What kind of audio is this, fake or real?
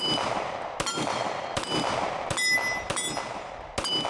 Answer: real